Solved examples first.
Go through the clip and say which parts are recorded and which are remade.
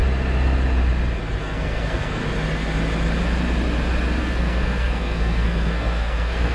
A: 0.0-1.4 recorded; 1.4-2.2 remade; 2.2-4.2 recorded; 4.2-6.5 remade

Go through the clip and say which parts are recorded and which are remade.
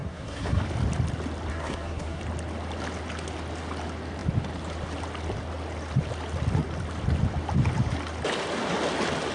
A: 0.0-0.6 remade; 0.6-1.5 recorded; 1.5-2.2 remade; 2.2-9.3 recorded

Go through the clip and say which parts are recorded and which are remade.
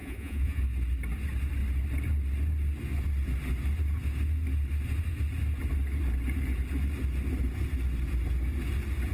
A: 0.0-0.6 remade; 0.6-9.1 recorded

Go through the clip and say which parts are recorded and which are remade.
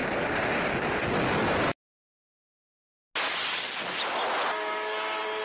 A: 0.0-5.4 recorded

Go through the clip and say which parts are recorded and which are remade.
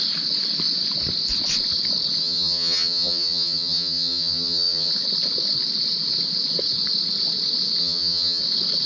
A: 0.0-2.2 recorded; 2.2-4.9 remade; 4.9-7.8 recorded; 7.8-8.4 remade; 8.4-8.9 recorded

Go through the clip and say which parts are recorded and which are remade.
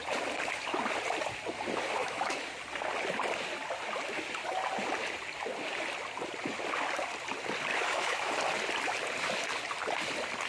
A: 0.0-2.0 recorded; 2.0-2.5 remade; 2.5-7.7 recorded; 7.7-8.3 remade; 8.3-10.5 recorded